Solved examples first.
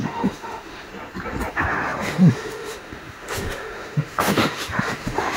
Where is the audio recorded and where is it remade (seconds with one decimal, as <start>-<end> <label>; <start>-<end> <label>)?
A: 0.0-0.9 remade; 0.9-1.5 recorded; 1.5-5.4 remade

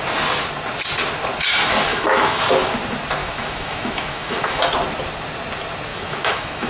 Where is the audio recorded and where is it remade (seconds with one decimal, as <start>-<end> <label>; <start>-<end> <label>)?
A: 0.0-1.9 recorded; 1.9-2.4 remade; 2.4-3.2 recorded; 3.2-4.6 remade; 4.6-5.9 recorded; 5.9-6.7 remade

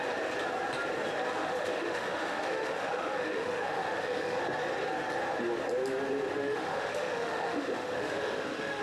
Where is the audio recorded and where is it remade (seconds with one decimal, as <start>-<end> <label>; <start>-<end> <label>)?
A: 0.0-1.3 recorded; 1.3-4.4 remade; 4.4-6.3 recorded; 6.3-8.8 remade